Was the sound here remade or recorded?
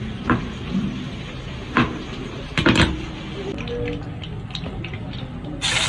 recorded